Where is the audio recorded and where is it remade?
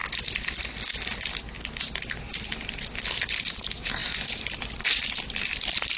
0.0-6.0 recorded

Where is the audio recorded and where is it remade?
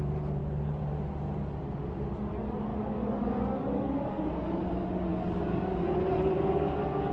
0.0-2.7 recorded; 2.7-4.6 remade; 4.6-5.1 recorded; 5.1-5.8 remade; 5.8-7.1 recorded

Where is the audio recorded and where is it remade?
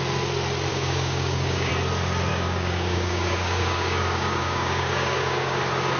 0.0-0.7 recorded; 0.7-1.7 remade; 1.7-2.3 recorded; 2.3-5.6 remade; 5.6-6.0 recorded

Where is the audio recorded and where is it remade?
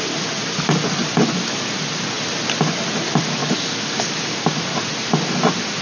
0.0-3.4 recorded; 3.4-4.6 remade; 4.6-5.8 recorded